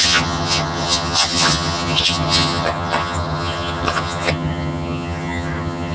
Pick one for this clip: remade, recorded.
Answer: remade